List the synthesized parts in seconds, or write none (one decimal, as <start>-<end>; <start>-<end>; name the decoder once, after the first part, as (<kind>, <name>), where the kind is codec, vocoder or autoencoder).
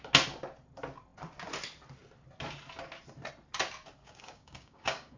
4.0-5.2 (codec, DAC)